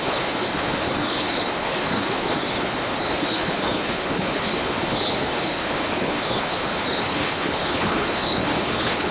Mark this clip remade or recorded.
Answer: remade